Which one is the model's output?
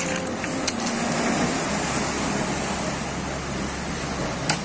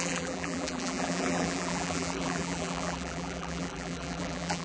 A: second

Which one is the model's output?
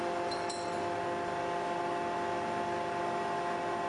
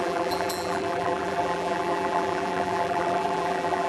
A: second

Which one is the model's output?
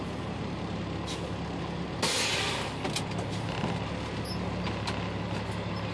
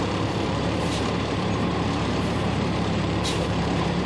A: second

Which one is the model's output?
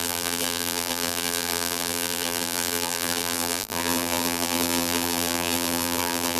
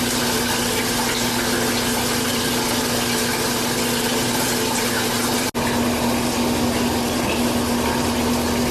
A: first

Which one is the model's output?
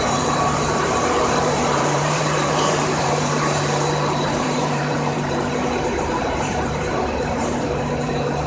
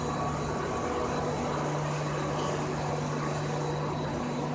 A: first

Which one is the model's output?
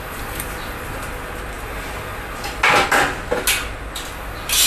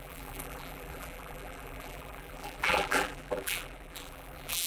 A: second